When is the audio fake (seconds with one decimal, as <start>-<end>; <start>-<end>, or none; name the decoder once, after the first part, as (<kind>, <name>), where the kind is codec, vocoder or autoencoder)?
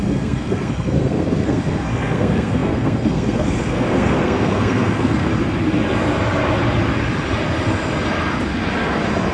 0.0-5.3 (codec, SNAC)